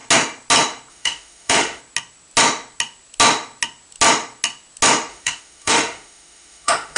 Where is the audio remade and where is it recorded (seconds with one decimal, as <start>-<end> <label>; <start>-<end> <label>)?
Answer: 0.0-0.9 recorded; 0.9-1.8 remade; 1.8-5.1 recorded; 5.1-7.0 remade